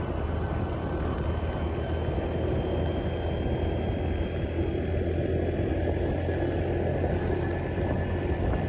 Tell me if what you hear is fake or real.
real